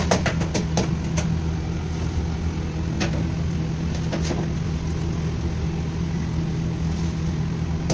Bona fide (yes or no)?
yes